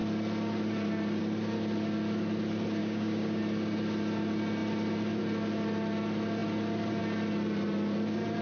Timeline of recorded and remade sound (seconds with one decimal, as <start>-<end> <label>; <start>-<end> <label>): 0.0-2.8 recorded; 2.8-3.4 remade; 3.4-8.4 recorded